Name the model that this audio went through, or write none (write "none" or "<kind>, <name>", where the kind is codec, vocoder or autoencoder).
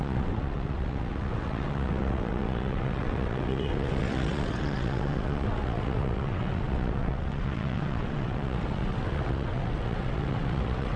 vocoder, WaveNeXt